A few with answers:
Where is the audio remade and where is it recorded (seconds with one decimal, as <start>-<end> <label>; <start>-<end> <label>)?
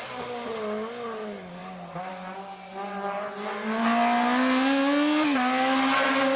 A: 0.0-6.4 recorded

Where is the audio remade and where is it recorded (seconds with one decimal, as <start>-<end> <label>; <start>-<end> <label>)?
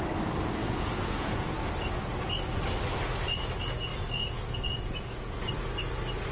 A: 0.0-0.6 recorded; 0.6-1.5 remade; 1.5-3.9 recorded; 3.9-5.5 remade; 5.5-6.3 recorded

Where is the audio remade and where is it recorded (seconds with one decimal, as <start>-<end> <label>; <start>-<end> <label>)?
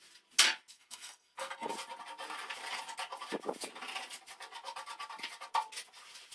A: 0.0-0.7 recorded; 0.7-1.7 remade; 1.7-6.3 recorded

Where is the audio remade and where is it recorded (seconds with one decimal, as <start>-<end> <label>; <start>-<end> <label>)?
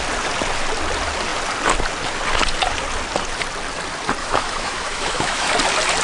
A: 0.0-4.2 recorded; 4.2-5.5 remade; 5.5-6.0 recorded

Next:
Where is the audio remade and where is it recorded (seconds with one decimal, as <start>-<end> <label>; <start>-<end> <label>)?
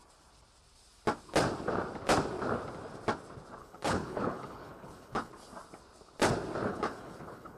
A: 0.0-3.6 recorded; 3.6-5.3 remade; 5.3-6.7 recorded; 6.7-7.6 remade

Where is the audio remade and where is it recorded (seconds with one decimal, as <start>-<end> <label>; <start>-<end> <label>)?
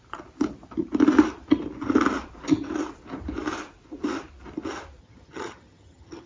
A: 0.0-5.0 recorded; 5.0-6.3 remade